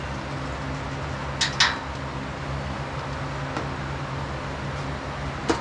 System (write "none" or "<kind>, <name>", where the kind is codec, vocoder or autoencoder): none